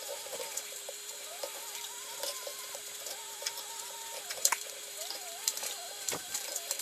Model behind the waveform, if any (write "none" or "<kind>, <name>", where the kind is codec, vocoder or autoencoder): vocoder, BigVGAN v2